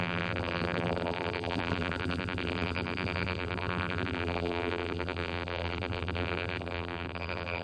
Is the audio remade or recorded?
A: remade